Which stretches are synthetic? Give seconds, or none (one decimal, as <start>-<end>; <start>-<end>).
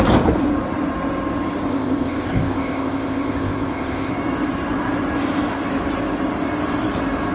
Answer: 1.7-4.1